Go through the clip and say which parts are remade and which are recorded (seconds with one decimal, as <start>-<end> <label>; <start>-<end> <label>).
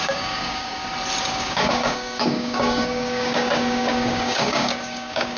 0.0-0.8 remade; 0.8-1.3 recorded; 1.3-5.4 remade